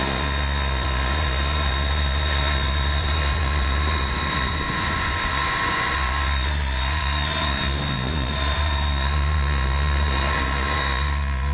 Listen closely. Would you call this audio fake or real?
fake